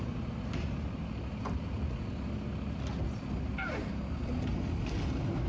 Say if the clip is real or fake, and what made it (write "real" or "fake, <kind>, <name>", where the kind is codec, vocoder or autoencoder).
real